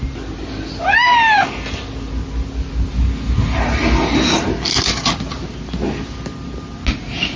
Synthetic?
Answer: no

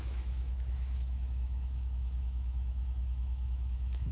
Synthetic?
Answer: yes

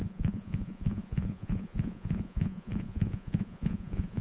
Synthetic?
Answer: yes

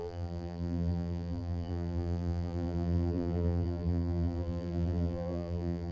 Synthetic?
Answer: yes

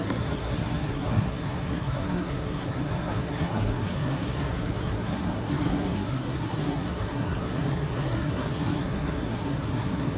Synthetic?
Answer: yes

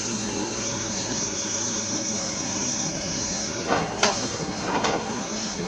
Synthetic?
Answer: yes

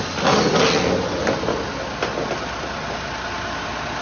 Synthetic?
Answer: no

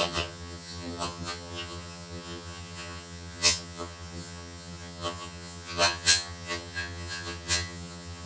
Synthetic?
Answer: yes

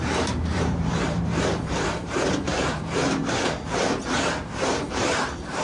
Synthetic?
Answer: yes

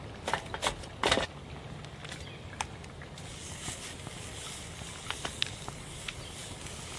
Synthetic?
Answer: no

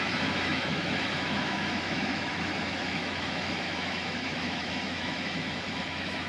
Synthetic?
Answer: yes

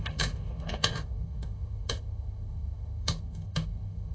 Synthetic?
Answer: yes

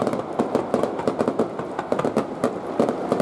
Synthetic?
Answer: no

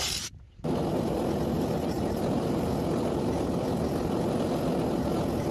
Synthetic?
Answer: no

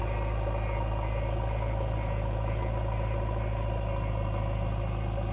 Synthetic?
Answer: no